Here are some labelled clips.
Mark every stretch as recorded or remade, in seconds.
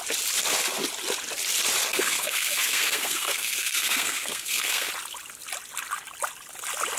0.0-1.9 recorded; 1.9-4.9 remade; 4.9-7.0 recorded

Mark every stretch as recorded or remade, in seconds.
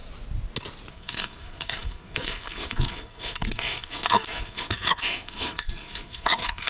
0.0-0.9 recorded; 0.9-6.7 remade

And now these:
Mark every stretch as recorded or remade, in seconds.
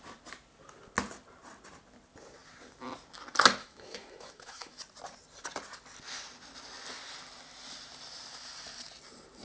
0.0-3.6 recorded; 3.6-4.8 remade; 4.8-9.4 recorded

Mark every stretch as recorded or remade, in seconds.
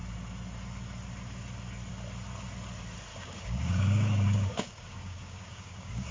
0.0-3.1 recorded; 3.1-6.1 remade